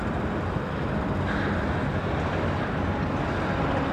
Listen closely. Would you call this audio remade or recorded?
recorded